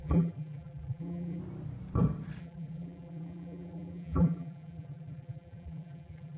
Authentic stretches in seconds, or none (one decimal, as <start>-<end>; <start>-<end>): 1.4-2.4